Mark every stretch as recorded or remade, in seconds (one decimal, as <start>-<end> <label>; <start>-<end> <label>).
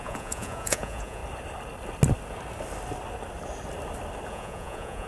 0.0-1.2 remade; 1.2-4.3 recorded; 4.3-5.1 remade